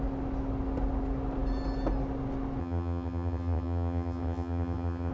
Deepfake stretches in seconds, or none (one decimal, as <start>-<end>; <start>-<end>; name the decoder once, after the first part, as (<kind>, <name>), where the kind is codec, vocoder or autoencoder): 2.6-5.1 (vocoder, HiFi-GAN)